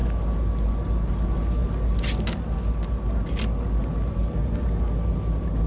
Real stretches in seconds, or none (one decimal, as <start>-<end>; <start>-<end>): 0.0-5.7